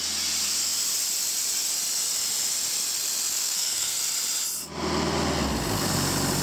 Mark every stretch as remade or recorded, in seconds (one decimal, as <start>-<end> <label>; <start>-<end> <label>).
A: 0.0-3.3 recorded; 3.3-4.0 remade; 4.0-6.4 recorded